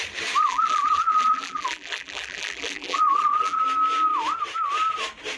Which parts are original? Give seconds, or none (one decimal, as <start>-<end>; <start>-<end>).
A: 0.0-0.4; 3.6-5.4